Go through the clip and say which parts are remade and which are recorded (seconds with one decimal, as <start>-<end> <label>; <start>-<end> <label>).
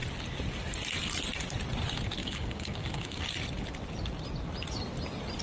0.0-2.2 recorded; 2.2-3.2 remade; 3.2-5.4 recorded